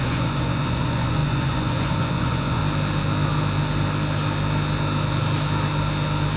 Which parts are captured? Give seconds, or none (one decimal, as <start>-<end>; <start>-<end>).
2.6-6.4